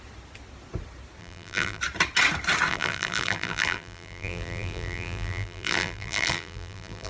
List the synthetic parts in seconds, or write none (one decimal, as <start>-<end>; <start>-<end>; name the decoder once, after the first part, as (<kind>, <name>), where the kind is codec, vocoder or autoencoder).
1.2-1.8 (vocoder, BigVGAN v2); 2.7-7.1